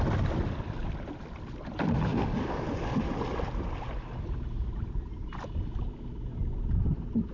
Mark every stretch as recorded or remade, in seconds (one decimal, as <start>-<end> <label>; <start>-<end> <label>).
0.0-7.3 recorded

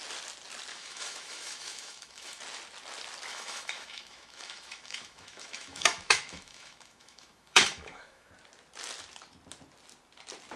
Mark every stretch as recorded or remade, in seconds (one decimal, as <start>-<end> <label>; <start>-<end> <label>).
0.0-0.7 recorded; 0.7-2.4 remade; 2.4-3.3 recorded; 3.3-8.3 remade; 8.3-10.6 recorded

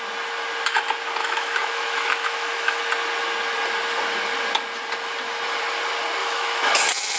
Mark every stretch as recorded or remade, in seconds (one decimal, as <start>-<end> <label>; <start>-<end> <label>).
0.0-1.2 recorded; 1.2-2.8 remade; 2.8-6.2 recorded; 6.2-6.7 remade; 6.7-7.2 recorded

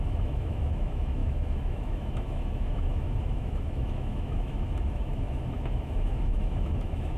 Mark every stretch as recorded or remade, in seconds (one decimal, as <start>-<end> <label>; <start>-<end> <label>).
0.0-7.2 remade